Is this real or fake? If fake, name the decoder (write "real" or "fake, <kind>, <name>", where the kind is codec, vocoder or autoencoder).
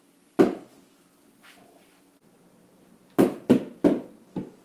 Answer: real